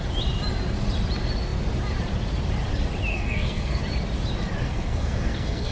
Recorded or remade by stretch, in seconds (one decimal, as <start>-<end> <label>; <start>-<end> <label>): 0.0-3.1 recorded; 3.1-3.8 remade; 3.8-4.6 recorded; 4.6-5.7 remade